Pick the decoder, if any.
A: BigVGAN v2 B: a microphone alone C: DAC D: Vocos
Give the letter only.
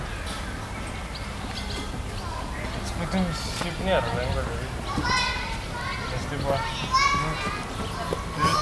B